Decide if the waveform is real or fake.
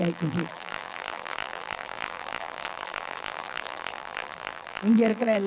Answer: fake